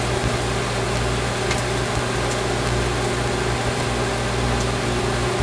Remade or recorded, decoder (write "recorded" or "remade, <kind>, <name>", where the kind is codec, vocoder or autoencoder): recorded